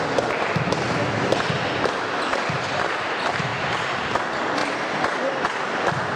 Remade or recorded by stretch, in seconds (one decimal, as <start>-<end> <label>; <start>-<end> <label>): 0.0-4.6 recorded; 4.6-5.3 remade; 5.3-6.2 recorded